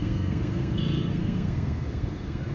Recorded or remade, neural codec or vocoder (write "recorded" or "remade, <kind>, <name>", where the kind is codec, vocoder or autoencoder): remade, codec, SNAC